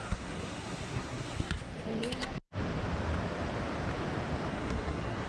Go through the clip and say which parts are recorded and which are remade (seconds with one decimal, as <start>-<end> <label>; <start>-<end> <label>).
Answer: 0.0-1.7 remade; 1.7-4.5 recorded; 4.5-5.3 remade